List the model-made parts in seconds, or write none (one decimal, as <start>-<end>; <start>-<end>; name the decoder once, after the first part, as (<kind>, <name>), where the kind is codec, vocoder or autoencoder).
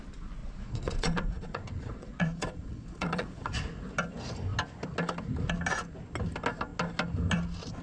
0.4-3.6 (vocoder, Vocos)